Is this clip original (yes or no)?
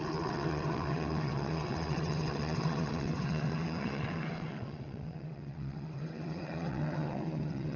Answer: no